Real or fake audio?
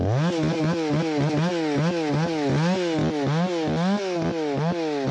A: real